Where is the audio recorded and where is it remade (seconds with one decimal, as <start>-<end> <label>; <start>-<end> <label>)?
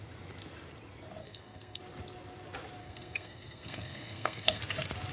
0.0-1.2 recorded; 1.2-1.8 remade; 1.8-2.8 recorded; 2.8-4.6 remade; 4.6-5.1 recorded